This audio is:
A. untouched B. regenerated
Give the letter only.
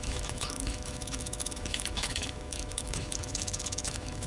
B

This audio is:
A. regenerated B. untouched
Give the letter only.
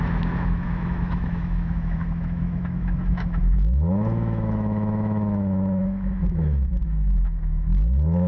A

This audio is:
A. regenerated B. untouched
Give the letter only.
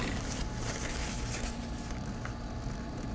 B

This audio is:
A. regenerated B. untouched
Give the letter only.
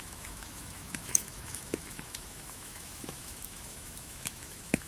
A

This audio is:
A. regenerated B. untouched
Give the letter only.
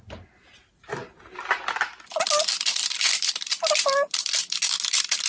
B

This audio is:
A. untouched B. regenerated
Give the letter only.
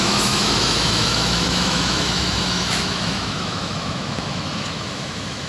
B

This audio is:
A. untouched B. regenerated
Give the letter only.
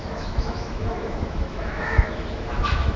B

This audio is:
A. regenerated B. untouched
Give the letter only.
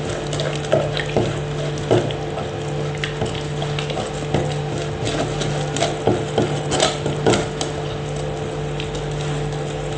B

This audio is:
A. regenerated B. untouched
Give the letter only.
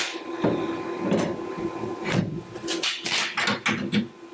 B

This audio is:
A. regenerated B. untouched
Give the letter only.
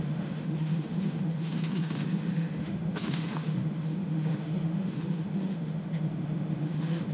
A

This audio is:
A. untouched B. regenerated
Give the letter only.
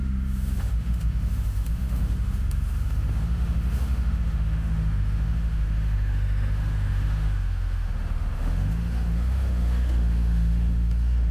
B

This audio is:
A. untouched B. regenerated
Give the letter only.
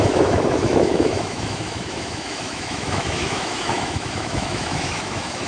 B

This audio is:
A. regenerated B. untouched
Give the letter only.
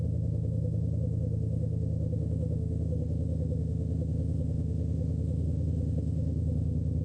A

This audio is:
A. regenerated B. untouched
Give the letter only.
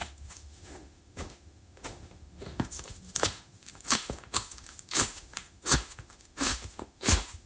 A